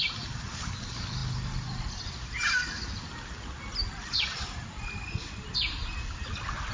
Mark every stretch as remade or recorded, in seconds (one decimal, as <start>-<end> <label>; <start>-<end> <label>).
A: 0.0-6.7 recorded